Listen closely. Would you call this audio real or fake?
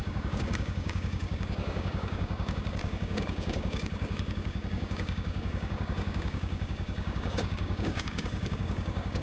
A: fake